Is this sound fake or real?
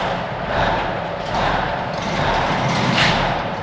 fake